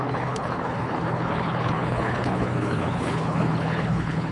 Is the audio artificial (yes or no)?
yes